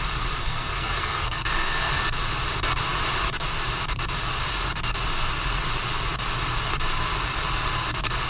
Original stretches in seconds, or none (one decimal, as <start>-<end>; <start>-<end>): 0.0-0.4; 2.0-8.3